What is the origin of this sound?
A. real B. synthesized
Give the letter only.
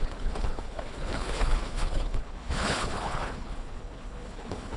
B